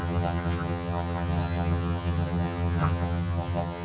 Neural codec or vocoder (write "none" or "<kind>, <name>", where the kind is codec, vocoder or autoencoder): vocoder, HiFi-GAN